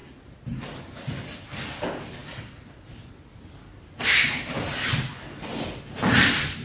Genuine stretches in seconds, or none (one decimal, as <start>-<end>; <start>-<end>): 0.0-6.6